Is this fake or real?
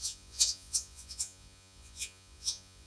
fake